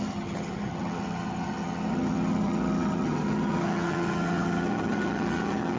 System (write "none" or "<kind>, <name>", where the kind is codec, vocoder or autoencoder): vocoder, HiFi-GAN